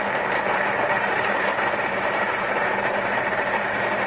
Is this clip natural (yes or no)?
no